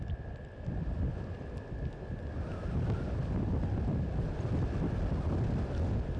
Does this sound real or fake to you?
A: real